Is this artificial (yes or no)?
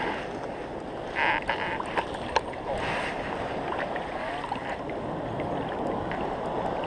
no